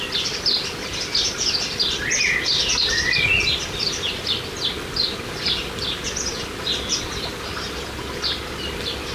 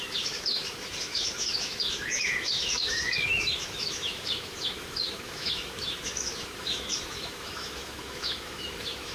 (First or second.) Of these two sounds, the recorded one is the first